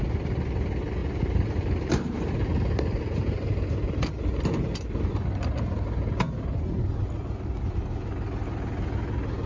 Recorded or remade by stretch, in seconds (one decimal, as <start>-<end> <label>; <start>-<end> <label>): 0.0-1.0 recorded; 1.0-2.3 remade; 2.3-9.5 recorded